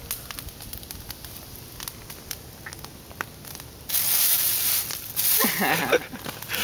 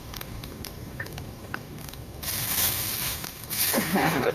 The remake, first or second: second